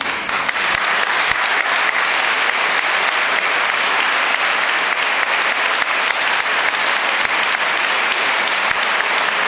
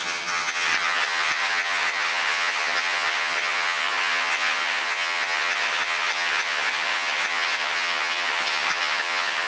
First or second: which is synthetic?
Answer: second